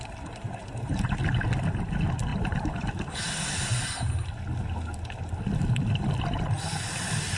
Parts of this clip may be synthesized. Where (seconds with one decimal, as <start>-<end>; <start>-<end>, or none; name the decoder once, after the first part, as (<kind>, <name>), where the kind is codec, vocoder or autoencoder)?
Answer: 0.6-1.2 (vocoder, BigVGAN v2); 2.3-2.8